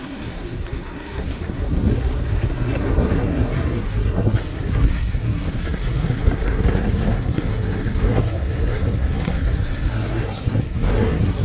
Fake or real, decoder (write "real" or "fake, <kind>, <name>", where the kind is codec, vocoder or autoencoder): fake, codec, SNAC